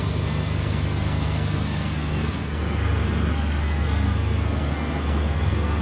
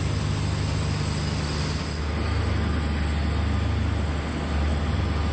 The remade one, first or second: first